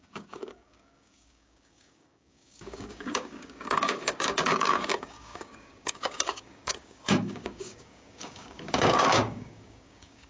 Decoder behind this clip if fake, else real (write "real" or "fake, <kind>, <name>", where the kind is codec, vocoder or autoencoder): fake, codec, DAC